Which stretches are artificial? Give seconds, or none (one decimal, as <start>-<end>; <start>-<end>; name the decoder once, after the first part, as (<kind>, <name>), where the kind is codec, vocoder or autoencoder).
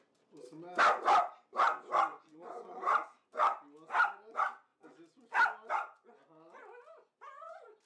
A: 2.1-2.8 (vocoder, Vocos)